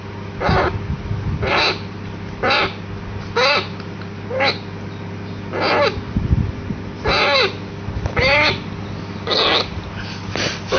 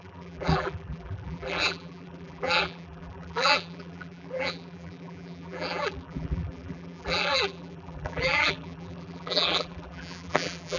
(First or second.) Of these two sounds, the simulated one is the second